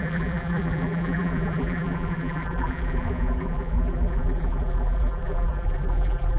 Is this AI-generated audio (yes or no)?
yes